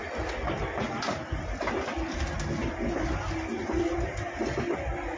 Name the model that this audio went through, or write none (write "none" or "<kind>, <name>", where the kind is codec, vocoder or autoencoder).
none